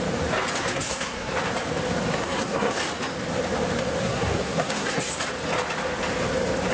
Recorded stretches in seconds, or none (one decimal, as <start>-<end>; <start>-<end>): 0.0-0.6; 1.3-2.1; 2.7-4.0; 5.0-6.7